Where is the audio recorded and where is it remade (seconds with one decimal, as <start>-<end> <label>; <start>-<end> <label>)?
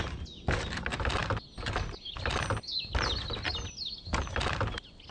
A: 0.0-5.1 recorded